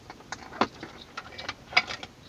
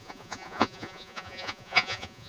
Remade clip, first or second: second